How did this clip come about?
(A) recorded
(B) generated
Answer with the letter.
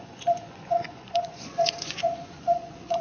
B